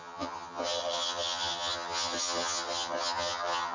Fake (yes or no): yes